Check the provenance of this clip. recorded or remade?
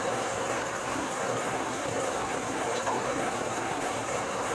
remade